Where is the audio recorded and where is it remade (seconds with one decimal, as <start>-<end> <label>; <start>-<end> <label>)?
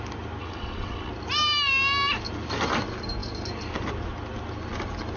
0.0-0.4 recorded; 0.4-1.1 remade; 1.1-5.2 recorded